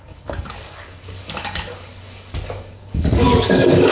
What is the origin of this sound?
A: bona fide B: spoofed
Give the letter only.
B